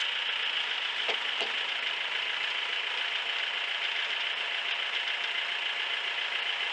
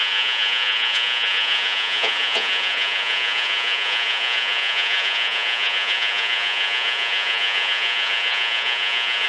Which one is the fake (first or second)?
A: second